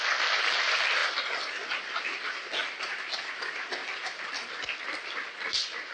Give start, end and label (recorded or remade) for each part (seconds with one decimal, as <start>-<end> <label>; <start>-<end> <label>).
0.0-5.9 recorded